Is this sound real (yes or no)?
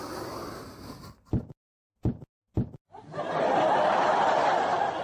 yes